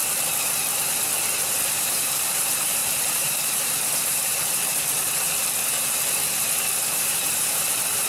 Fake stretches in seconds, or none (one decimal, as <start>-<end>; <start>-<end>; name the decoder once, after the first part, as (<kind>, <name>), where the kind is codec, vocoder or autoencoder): 1.7-5.6 (vocoder, BigVGAN v2); 6.7-8.1